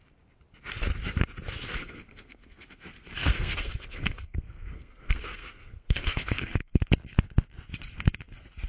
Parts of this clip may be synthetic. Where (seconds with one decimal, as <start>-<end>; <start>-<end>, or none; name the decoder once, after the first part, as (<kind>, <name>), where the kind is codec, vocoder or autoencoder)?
1.8-6.9 (codec, SNAC)